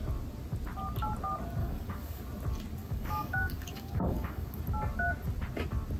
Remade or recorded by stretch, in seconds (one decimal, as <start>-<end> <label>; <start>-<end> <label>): 0.0-1.6 recorded; 1.6-2.2 remade; 2.2-2.8 recorded; 2.8-4.6 remade; 4.6-6.0 recorded